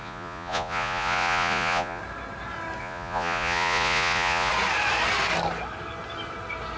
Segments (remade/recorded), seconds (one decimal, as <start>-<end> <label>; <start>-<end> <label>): 0.0-2.0 remade; 2.0-2.8 recorded; 2.8-4.5 remade; 4.5-6.8 recorded

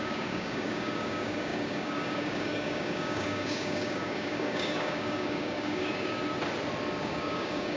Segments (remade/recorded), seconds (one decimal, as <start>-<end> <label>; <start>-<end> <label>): 0.0-6.2 remade; 6.2-7.0 recorded; 7.0-7.8 remade